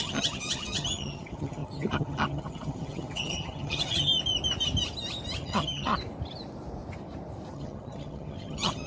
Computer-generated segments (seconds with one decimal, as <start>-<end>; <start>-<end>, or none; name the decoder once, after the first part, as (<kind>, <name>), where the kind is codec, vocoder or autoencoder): 0.0-4.1 (vocoder, HiFi-GAN); 5.4-5.9; 7.5-8.9